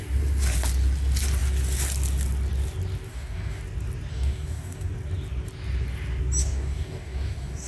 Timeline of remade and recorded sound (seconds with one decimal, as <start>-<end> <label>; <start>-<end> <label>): 0.0-3.1 recorded; 3.1-3.6 remade; 3.6-4.1 recorded; 4.1-4.9 remade; 4.9-6.4 recorded; 6.4-7.7 remade